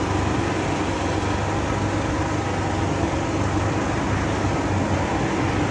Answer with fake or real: real